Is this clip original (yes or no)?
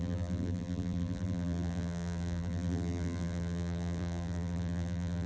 no